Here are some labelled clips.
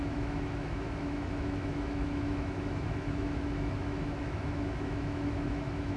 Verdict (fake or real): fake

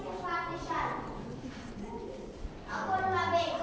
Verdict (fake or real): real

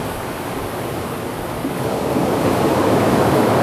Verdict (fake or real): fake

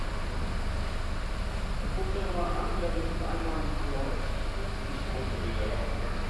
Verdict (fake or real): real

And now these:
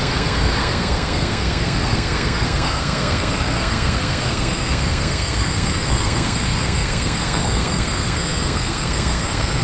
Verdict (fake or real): fake